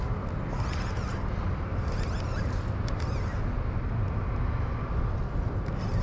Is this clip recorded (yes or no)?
yes